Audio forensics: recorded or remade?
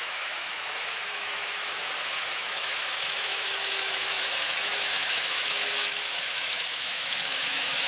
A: remade